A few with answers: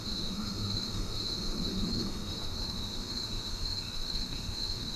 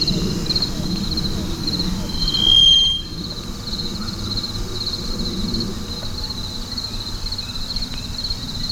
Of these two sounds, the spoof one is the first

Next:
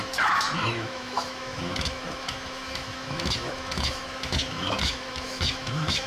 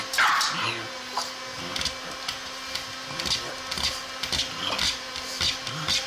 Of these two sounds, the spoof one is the first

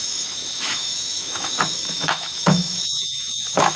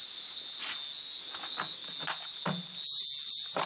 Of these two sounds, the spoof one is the first